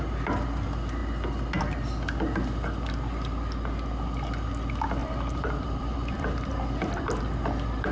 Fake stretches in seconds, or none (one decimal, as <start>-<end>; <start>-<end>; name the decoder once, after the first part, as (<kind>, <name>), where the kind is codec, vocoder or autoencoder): 5.0-7.2 (vocoder, BigVGAN v2)